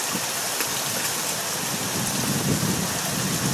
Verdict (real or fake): real